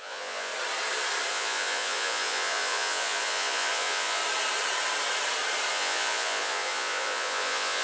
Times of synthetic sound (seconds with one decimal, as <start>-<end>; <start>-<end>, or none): 0.0-0.5; 1.3-4.2; 5.7-7.8